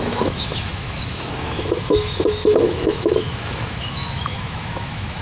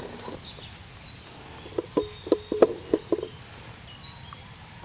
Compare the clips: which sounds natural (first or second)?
second